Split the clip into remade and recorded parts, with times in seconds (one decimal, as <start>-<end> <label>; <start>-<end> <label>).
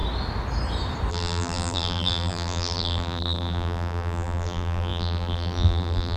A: 0.0-1.1 recorded; 1.1-6.2 remade